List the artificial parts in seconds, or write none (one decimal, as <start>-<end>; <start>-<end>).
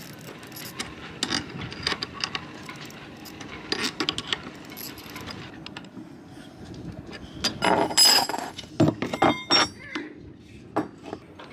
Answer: 8.1-8.7